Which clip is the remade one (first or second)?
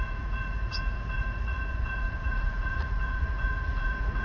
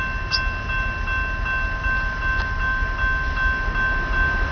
first